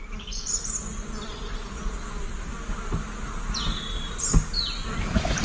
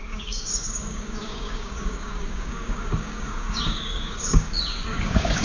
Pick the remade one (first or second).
second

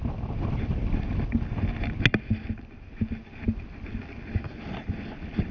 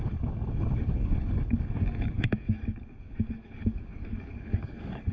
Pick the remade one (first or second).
second